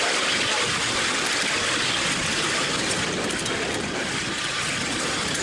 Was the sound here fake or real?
real